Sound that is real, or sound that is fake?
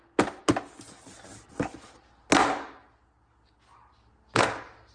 real